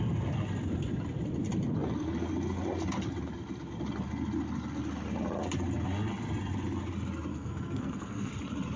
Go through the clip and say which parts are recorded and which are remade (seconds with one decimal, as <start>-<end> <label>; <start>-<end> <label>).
0.0-7.3 recorded; 7.3-8.3 remade; 8.3-8.8 recorded